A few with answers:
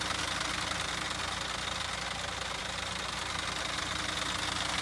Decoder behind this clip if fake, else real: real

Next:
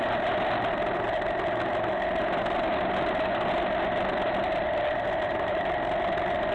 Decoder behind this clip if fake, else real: real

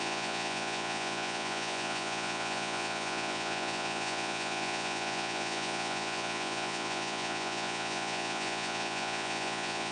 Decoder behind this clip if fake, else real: fake, vocoder, Vocos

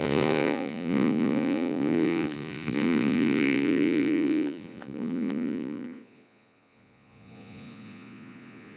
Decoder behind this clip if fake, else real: fake, vocoder, Vocos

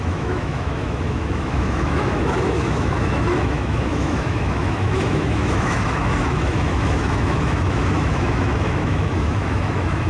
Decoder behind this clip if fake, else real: fake, autoencoder, DAC-VAE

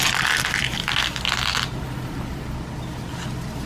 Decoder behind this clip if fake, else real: real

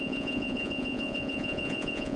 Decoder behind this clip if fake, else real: fake, vocoder, Vocos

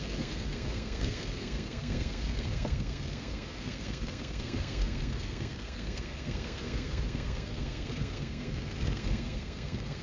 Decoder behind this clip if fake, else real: fake, codec, SNAC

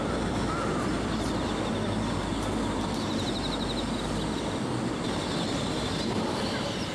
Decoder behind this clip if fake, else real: real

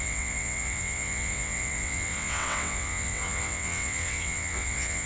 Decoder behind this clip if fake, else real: fake, vocoder, WaveNeXt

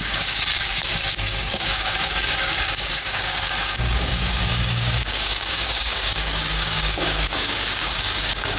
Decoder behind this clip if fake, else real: fake, codec, DAC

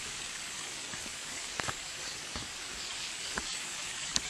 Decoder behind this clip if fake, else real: fake, codec, DAC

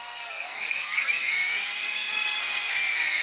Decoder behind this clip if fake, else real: fake, codec, SNAC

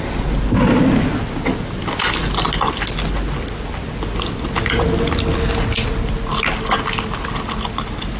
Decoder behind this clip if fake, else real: real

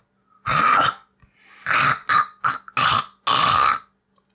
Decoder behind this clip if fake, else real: real